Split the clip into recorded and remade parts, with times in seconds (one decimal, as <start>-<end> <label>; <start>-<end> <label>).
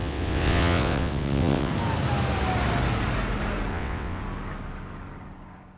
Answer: 0.0-1.7 remade; 1.7-3.7 recorded; 3.7-4.2 remade; 4.2-5.8 recorded